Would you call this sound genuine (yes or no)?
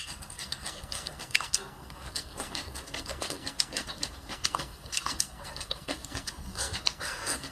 no